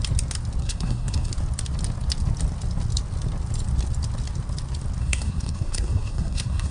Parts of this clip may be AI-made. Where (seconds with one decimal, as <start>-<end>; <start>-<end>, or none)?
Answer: 0.6-1.3; 5.0-6.7